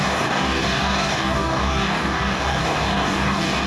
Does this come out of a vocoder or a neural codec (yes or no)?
yes